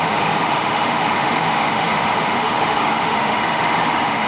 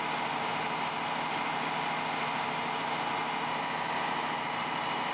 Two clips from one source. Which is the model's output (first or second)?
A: first